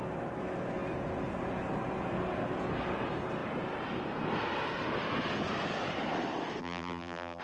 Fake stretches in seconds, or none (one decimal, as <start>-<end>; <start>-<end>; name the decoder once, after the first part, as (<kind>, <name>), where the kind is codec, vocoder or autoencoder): 6.6-7.4 (vocoder, BigVGAN v2)